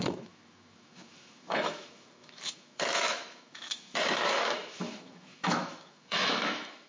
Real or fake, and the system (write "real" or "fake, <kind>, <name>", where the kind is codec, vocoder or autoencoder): fake, autoencoder, DAC-VAE